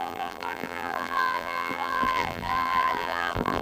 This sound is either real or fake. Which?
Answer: fake